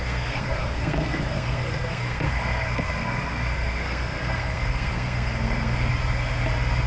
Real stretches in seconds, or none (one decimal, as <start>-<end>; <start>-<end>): 5.9-6.9